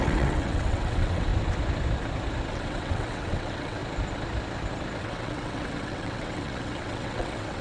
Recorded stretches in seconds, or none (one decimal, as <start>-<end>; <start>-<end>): 1.3-2.5; 3.8-5.0